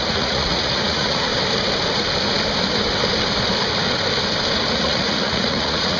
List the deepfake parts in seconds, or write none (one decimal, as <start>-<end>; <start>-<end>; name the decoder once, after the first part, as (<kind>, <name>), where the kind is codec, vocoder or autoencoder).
0.0-1.3 (vocoder, Vocos); 4.7-6.0